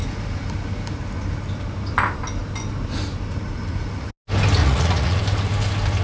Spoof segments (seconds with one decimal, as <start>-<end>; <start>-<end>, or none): 4.6-5.2

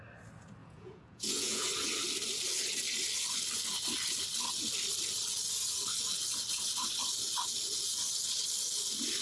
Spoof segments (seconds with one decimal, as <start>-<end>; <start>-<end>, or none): 0.6-1.7

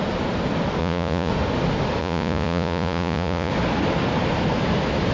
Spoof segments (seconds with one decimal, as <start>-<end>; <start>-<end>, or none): 0.8-1.3; 2.0-3.5

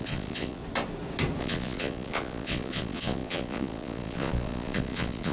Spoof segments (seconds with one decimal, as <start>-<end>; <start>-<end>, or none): 0.0-0.6; 1.4-5.3

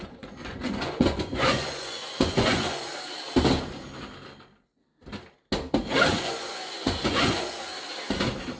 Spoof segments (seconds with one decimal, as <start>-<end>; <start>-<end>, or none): 0.0-2.9; 6.1-7.7

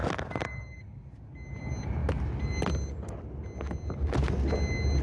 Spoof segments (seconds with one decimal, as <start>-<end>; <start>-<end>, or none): none

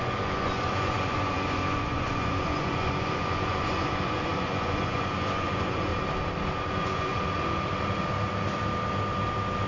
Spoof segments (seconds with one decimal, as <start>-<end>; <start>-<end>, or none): 0.0-5.9; 6.6-7.1